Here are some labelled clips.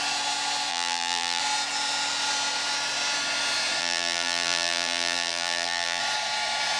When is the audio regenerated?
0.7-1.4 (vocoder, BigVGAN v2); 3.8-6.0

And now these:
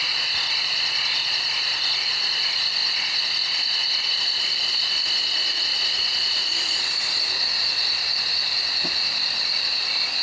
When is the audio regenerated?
none

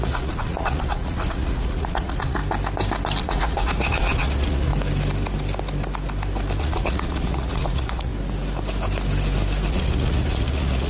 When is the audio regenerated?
0.0-2.4 (vocoder, Vocos); 3.2-4.7; 6.6-8.1; 9.7-10.9

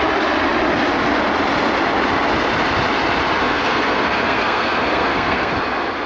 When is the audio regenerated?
3.4-5.5 (codec, SNAC)

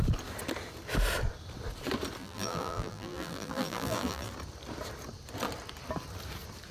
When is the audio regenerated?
2.2-4.3 (vocoder, BigVGAN v2)

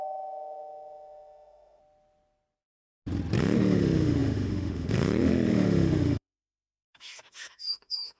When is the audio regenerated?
0.0-1.8 (autoencoder, DAC-VAE); 3.4-8.2